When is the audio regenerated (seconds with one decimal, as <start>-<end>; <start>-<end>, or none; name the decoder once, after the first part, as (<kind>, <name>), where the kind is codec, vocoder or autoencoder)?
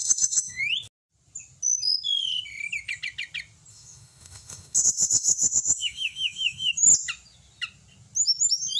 0.0-0.6 (autoencoder, DAC-VAE); 3.7-6.7